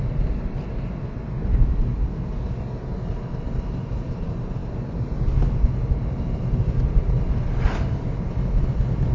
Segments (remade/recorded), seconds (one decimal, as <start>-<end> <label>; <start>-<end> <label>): 0.0-9.1 recorded